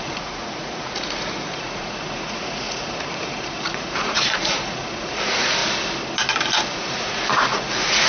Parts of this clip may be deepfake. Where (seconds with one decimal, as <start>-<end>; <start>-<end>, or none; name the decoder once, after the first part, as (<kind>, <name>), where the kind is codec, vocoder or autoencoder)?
0.0-5.6 (vocoder, Vocos); 6.8-8.1